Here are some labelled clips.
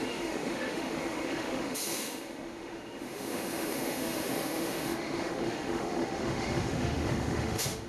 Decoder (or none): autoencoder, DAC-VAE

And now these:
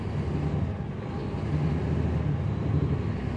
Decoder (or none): none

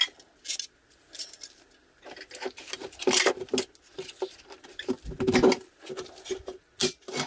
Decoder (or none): none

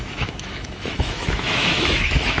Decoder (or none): autoencoder, DAC-VAE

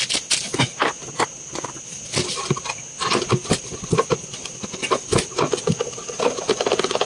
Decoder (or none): none